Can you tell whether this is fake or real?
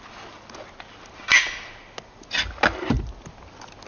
real